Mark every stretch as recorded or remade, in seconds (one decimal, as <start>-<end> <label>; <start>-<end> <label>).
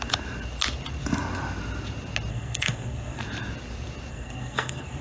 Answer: 0.0-2.3 recorded; 2.3-3.2 remade; 3.2-4.1 recorded; 4.1-5.0 remade